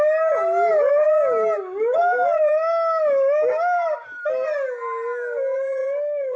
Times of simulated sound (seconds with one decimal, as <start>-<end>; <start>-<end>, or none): none